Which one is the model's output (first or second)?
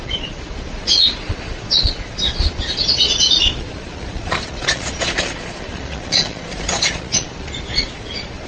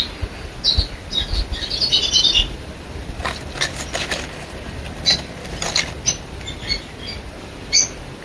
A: first